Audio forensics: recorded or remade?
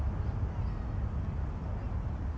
recorded